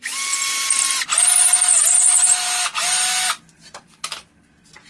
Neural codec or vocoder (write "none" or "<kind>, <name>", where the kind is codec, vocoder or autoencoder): none